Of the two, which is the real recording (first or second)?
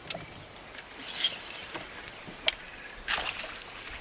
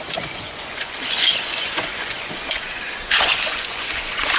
first